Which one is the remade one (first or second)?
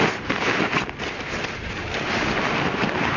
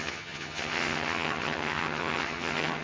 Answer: second